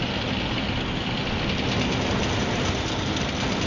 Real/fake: real